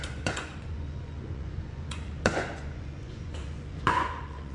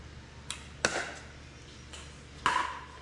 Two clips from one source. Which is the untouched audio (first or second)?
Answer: second